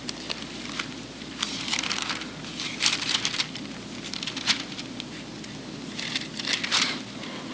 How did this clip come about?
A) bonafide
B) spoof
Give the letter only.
B